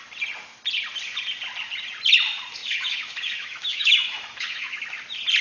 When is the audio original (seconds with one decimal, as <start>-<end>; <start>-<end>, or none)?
0.0-2.6; 4.8-5.4